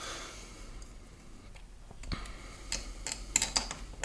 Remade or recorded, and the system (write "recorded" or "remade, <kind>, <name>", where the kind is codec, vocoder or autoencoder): recorded